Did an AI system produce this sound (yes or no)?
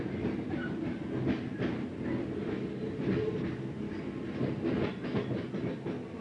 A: no